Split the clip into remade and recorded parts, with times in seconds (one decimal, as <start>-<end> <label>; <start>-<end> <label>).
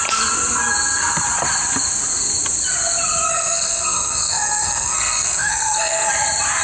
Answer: 0.0-3.3 recorded; 3.3-6.1 remade; 6.1-6.6 recorded